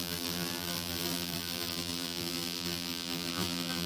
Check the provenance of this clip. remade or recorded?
remade